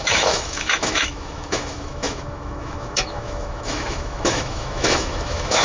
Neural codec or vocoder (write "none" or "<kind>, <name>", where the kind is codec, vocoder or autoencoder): autoencoder, DAC-VAE